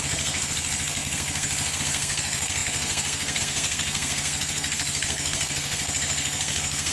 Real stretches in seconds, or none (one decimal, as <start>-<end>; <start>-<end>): none

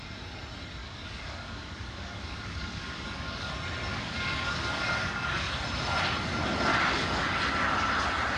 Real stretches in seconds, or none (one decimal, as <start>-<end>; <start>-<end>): 0.0-0.8; 3.5-3.9; 5.5-6.7; 7.4-8.4

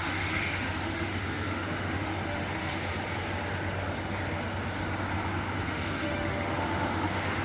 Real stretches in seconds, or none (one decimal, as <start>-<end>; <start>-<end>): 2.9-5.6